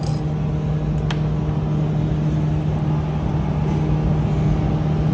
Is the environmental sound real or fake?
real